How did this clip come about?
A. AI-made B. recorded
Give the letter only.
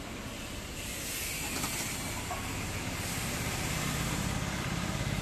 A